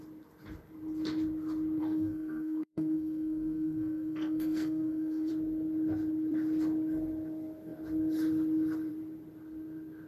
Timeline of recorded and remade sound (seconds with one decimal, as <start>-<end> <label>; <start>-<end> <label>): 0.0-1.8 recorded; 1.8-5.3 remade; 5.3-10.1 recorded